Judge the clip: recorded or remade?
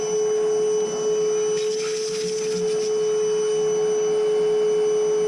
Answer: recorded